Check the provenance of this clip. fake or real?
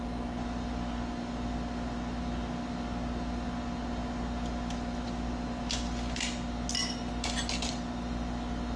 real